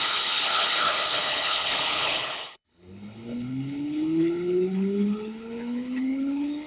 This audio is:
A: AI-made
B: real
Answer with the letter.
A